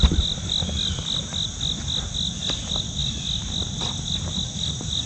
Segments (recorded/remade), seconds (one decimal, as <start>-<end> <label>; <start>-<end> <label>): 0.0-5.1 recorded